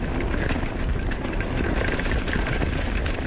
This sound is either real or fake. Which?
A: real